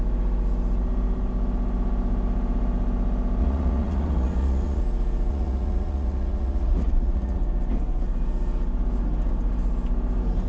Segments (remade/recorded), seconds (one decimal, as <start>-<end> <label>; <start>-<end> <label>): 0.0-3.4 recorded; 3.4-4.8 remade; 4.8-5.3 recorded; 5.3-7.4 remade; 7.4-10.5 recorded